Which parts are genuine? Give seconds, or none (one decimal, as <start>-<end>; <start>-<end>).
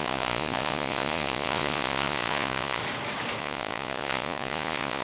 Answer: 2.8-3.4